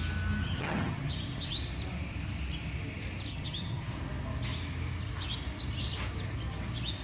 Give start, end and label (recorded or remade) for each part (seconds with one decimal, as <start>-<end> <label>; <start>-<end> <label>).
0.0-0.4 recorded; 0.4-1.1 remade; 1.1-3.3 recorded; 3.3-3.9 remade; 3.9-7.0 recorded